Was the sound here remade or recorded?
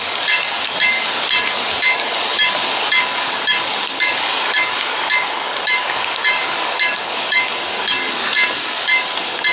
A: remade